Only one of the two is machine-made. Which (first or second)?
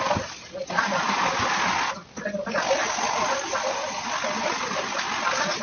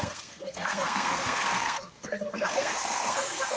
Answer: second